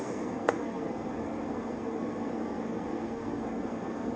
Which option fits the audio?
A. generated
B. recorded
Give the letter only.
A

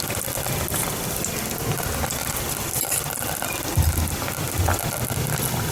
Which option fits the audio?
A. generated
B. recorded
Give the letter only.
B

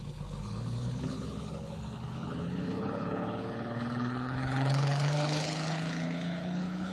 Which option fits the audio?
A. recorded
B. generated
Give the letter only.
B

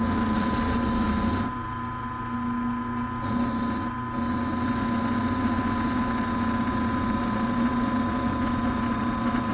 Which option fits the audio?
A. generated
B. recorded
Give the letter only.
B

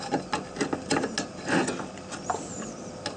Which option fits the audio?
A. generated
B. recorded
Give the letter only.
B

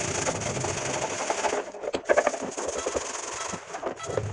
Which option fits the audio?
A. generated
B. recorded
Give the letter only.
B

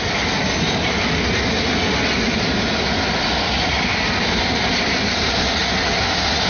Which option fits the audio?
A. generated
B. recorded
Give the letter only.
B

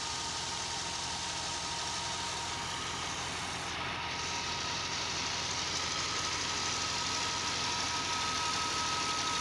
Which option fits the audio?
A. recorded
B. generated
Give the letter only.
A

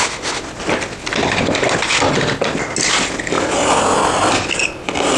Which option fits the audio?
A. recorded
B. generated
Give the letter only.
A